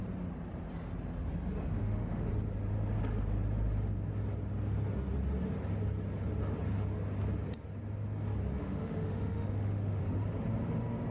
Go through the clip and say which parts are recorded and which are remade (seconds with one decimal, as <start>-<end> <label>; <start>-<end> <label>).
0.0-1.8 recorded; 1.8-2.3 remade; 2.3-8.6 recorded; 8.6-10.0 remade; 10.0-11.1 recorded